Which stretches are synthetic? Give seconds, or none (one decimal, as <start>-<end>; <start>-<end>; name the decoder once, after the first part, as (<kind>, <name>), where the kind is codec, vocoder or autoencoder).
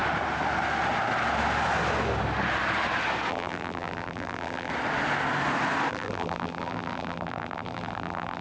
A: 3.3-4.7 (vocoder, BigVGAN v2); 5.9-8.4